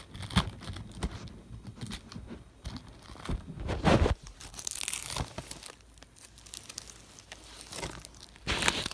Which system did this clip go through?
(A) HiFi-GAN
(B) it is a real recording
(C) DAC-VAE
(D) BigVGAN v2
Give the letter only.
B